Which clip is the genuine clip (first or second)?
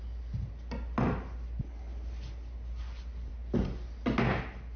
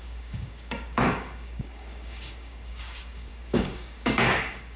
first